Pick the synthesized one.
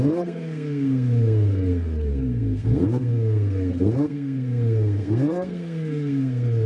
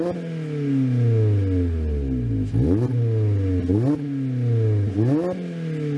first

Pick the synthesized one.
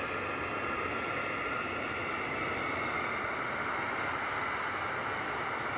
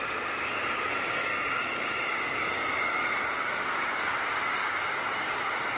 second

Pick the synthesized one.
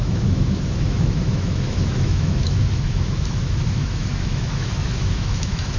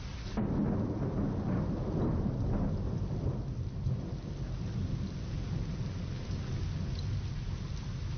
first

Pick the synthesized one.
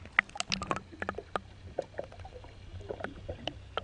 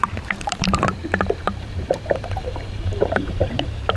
second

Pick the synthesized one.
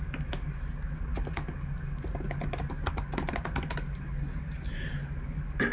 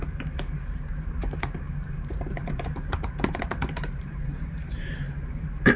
second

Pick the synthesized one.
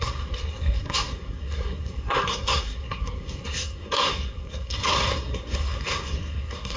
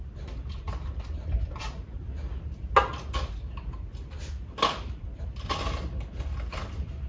first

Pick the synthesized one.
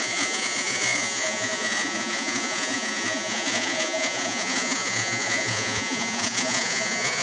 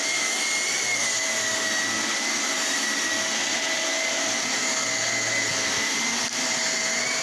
first